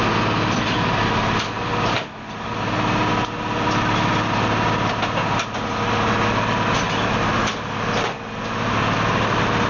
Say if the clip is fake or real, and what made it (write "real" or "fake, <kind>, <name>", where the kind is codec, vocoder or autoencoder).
real